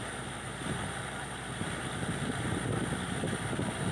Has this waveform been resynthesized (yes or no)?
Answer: no